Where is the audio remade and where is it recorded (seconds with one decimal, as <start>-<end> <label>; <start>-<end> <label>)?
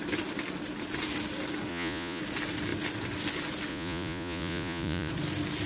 0.0-1.7 recorded; 1.7-2.2 remade; 2.2-3.7 recorded; 3.7-5.1 remade; 5.1-5.7 recorded